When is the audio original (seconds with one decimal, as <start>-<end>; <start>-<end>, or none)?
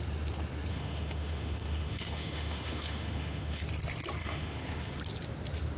0.0-0.7; 3.6-4.2; 5.0-5.8